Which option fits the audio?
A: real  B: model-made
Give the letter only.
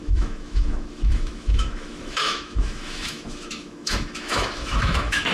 B